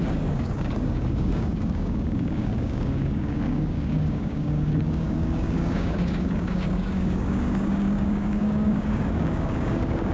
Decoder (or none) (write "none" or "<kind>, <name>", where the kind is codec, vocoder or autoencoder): codec, DAC